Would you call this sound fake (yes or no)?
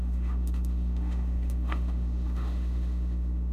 yes